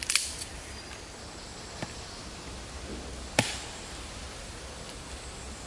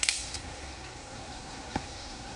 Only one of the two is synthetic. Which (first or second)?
second